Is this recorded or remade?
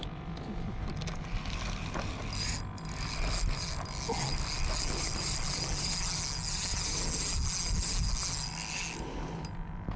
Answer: recorded